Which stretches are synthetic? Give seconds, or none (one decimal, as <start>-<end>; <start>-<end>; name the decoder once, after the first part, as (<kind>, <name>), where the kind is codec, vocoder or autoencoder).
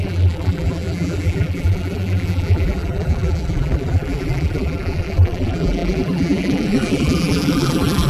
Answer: 0.0-8.1 (vocoder, BigVGAN v2)